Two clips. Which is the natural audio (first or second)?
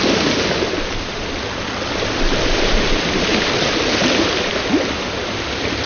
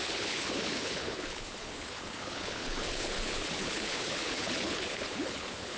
first